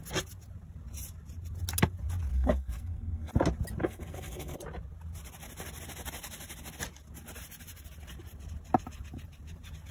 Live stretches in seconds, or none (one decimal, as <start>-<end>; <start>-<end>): 0.0-2.3; 3.3-3.8; 4.6-9.9